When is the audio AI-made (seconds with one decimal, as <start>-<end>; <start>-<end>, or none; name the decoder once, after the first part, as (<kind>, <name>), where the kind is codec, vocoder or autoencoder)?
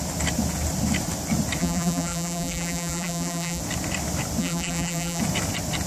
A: 1.6-3.6 (vocoder, BigVGAN v2); 4.4-5.2